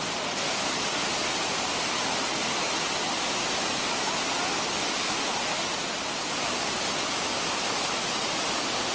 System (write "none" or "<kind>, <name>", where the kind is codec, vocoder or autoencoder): none